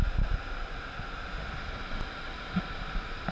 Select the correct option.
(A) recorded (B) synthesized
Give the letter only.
A